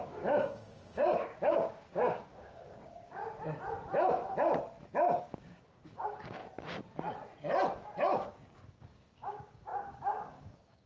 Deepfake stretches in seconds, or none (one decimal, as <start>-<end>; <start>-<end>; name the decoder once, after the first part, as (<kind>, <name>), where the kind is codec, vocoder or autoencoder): 0.0-3.2 (codec, DAC); 5.2-6.4; 8.6-10.9